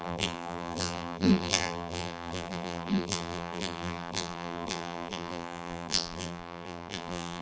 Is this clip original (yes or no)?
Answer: no